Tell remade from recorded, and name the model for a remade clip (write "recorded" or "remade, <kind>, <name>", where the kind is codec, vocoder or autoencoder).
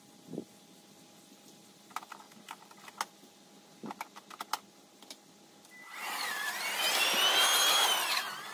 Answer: recorded